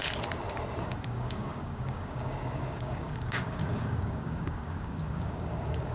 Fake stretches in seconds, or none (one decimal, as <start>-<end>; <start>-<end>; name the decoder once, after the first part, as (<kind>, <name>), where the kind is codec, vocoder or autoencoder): 0.8-5.9 (codec, DAC)